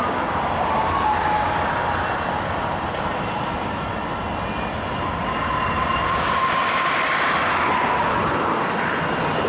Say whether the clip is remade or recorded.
recorded